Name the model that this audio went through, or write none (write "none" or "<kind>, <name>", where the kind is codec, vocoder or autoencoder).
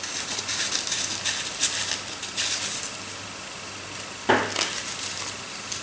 none